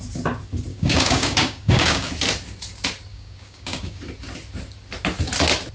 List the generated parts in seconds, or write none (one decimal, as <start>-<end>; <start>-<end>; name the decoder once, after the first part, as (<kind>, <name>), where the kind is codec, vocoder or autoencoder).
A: 0.7-2.1 (codec, DAC); 3.1-4.0